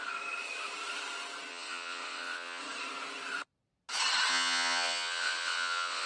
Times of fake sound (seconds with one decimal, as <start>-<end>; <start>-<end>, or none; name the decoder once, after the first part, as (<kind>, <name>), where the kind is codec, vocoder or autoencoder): 1.5-2.6 (vocoder, WaveNeXt); 4.3-6.1